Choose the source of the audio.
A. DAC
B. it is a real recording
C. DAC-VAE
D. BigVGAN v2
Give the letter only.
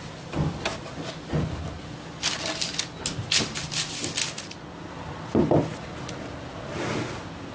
B